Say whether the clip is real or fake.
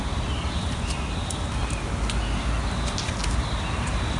real